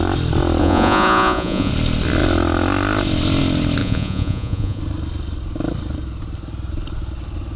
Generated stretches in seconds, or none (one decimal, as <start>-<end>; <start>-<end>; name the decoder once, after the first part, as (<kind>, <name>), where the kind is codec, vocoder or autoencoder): 0.6-1.7 (vocoder, Vocos); 3.8-4.8

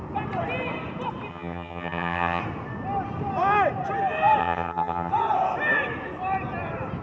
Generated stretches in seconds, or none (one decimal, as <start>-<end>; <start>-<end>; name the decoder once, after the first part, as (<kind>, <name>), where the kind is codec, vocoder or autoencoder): 1.3-2.4 (vocoder, HiFi-GAN); 4.4-5.1

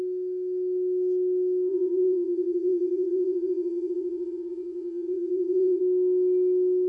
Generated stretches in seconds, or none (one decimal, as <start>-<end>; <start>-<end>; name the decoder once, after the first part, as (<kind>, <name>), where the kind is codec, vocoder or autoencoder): 1.7-5.8 (vocoder, WaveNeXt)

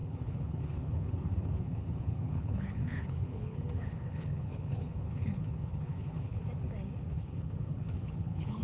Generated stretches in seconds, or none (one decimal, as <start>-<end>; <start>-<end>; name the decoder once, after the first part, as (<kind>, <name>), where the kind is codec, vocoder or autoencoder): 0.0-6.4 (codec, HILCodec); 7.1-8.6